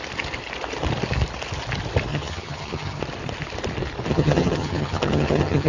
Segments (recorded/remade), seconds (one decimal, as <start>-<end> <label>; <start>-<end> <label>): 0.0-2.1 recorded; 2.1-3.0 remade; 3.0-4.1 recorded; 4.1-5.7 remade